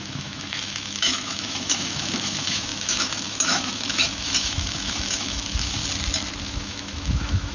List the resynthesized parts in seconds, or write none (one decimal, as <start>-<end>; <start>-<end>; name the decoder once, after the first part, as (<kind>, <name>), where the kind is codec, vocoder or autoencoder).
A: 0.0-5.8 (autoencoder, DAC-VAE); 6.4-7.5

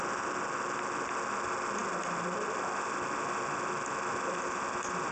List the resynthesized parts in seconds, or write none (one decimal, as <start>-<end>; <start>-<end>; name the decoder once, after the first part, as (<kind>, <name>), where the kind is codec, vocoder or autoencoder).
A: none

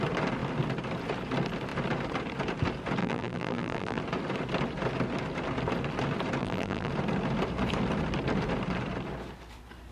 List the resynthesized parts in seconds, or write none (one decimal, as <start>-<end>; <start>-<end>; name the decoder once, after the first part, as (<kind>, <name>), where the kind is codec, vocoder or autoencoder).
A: 3.0-4.0 (vocoder, BigVGAN v2); 6.4-6.9

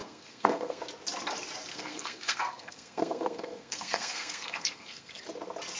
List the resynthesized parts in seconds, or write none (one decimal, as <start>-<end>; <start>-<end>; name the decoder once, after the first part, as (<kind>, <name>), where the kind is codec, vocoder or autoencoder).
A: 0.0-0.8 (codec, SNAC); 1.7-5.2

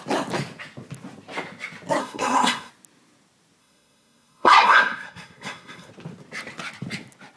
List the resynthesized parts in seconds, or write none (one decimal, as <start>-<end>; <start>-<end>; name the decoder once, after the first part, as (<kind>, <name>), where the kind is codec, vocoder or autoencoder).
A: 2.0-2.7 (codec, SNAC); 3.6-5.9

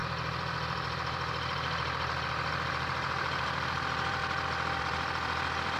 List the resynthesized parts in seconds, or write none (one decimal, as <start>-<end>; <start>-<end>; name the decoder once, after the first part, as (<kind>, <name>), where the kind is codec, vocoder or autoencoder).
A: 0.0-4.2 (vocoder, BigVGAN v2); 4.8-5.8

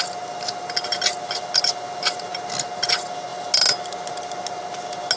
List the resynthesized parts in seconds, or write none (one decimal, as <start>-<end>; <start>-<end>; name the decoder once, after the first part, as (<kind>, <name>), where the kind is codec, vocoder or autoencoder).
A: none